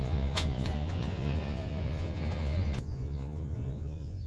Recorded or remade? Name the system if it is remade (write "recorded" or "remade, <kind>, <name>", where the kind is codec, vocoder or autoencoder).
remade, vocoder, Vocos